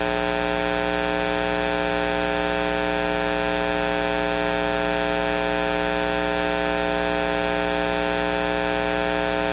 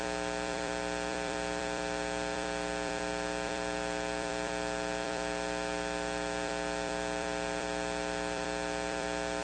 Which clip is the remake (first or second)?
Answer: second